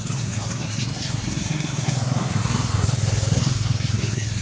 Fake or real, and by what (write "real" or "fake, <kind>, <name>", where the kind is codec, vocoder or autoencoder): fake, codec, SNAC